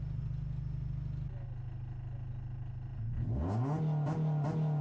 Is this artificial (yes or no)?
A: no